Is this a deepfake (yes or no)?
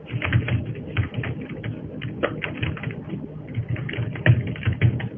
no